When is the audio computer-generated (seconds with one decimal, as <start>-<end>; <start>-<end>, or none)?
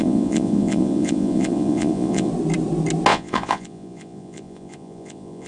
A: 0.0-2.3; 3.1-5.5